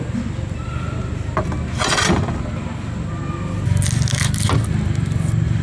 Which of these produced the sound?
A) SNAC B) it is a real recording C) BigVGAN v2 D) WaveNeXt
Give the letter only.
B